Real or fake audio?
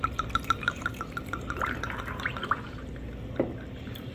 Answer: fake